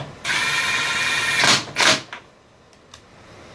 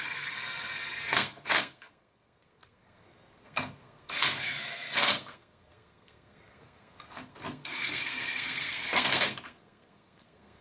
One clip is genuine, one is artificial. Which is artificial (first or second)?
second